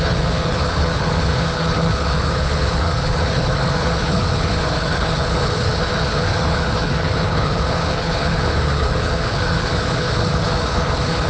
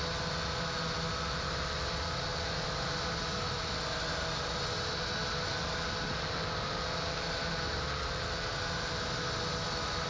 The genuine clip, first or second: second